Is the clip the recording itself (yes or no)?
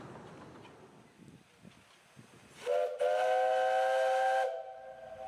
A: yes